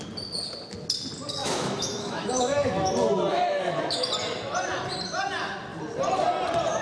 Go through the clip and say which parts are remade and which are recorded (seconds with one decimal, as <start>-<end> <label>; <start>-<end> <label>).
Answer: 0.0-1.4 recorded; 1.4-2.9 remade; 2.9-3.3 recorded; 3.3-4.1 remade; 4.1-6.8 recorded